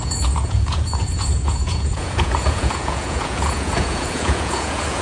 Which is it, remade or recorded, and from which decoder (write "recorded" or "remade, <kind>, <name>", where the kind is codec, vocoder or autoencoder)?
remade, vocoder, Vocos